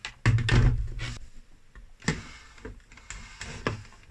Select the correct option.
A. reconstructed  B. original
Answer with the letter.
B